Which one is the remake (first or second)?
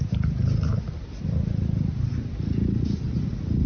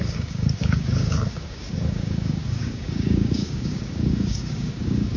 second